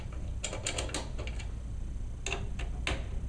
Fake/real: real